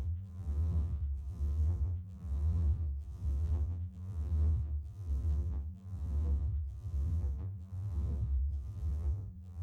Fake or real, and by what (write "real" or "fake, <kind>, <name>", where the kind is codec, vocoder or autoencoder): fake, vocoder, BigVGAN v2